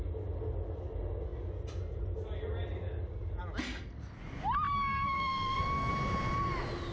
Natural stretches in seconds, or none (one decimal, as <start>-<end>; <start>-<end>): 0.0-4.7; 5.9-6.9